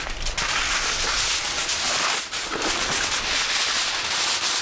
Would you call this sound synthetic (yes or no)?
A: no